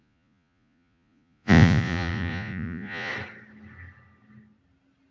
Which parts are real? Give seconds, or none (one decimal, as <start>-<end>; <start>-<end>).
3.1-5.1